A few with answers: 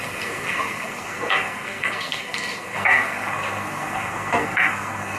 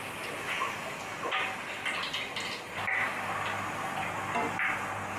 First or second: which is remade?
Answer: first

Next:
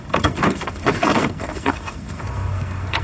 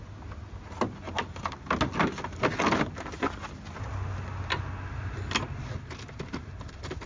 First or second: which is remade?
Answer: first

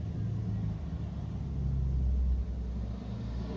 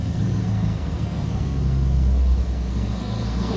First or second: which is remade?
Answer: second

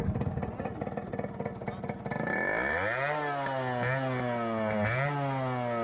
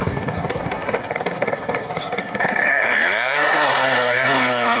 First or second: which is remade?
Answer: second